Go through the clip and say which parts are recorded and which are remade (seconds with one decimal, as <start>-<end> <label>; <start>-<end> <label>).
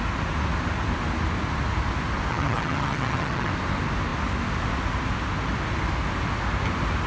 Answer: 0.0-2.3 recorded; 2.3-3.5 remade; 3.5-7.1 recorded